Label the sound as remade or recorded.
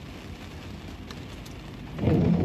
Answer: recorded